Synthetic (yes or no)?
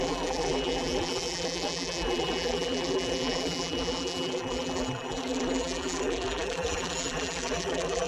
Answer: yes